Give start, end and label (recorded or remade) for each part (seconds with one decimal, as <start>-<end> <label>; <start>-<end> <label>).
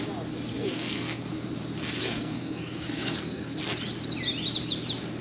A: 0.0-0.5 recorded; 0.5-1.3 remade; 1.3-2.0 recorded; 2.0-3.6 remade; 3.6-5.2 recorded